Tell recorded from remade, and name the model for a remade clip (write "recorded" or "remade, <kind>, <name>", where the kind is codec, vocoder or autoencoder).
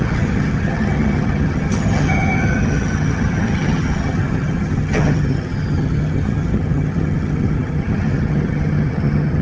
remade, vocoder, HiFi-GAN